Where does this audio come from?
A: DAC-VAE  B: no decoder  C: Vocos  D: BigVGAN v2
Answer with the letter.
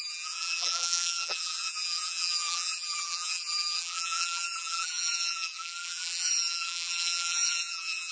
D